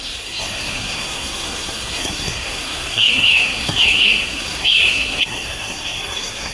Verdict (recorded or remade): remade